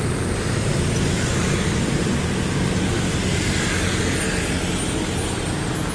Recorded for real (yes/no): yes